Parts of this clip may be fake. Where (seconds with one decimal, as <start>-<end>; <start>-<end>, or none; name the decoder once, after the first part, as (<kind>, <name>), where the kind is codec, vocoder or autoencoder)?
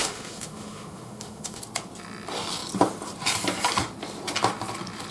0.0-1.6 (autoencoder, DAC-VAE)